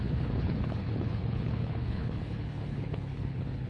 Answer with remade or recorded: remade